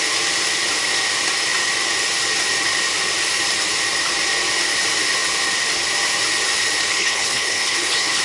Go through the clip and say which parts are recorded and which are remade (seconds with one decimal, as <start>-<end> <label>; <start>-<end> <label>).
0.0-6.9 recorded; 6.9-8.2 remade